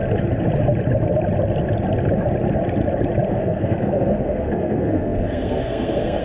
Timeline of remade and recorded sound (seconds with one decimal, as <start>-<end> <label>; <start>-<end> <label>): 0.0-3.3 recorded; 3.3-6.2 remade